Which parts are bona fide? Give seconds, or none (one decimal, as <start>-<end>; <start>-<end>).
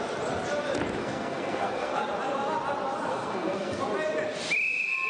0.0-1.0; 2.0-3.1; 3.8-5.1